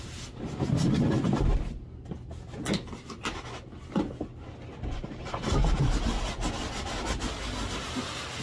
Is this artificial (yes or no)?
no